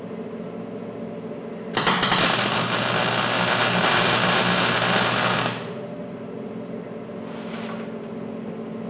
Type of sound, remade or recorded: recorded